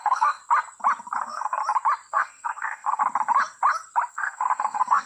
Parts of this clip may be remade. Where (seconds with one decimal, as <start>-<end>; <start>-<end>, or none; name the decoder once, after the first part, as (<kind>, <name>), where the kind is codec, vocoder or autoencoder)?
0.0-0.4 (codec, SNAC); 1.2-1.6; 2.1-3.0; 4.1-5.1